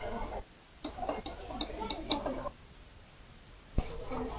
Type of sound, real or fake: real